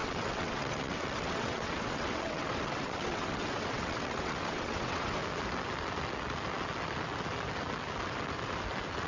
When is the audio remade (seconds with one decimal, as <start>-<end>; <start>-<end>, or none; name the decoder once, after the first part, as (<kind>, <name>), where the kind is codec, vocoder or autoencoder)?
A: 0.0-5.2 (vocoder, WaveNeXt)